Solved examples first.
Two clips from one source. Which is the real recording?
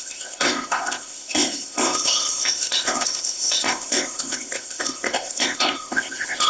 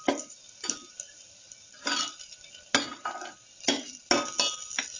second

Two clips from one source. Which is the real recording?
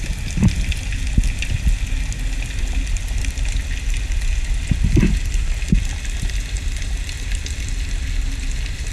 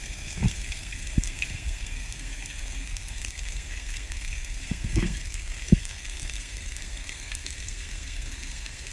first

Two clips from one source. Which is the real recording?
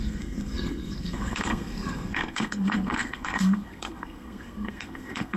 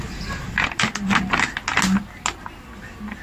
second